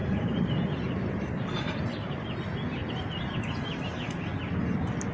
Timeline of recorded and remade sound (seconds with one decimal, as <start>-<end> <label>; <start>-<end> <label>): 0.0-2.2 remade; 2.2-5.1 recorded